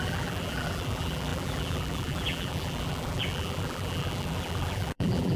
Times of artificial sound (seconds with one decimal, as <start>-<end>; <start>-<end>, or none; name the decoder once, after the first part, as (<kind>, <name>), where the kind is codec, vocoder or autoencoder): 0.0-5.4 (vocoder, BigVGAN v2)